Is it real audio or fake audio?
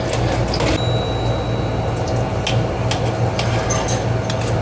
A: real